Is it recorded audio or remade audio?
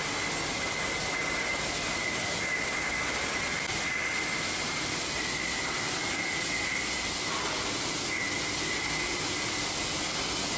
recorded